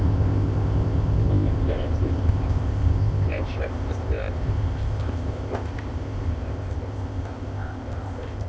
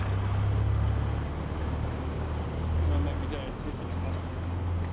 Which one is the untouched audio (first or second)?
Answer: second